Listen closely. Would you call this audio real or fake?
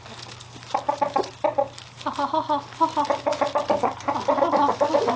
real